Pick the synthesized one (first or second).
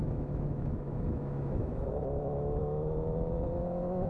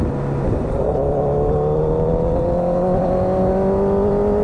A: first